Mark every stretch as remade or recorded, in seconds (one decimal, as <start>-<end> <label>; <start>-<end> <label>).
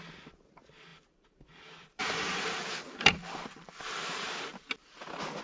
0.0-0.9 recorded; 0.9-4.1 remade; 4.1-4.5 recorded; 4.5-5.0 remade; 5.0-5.4 recorded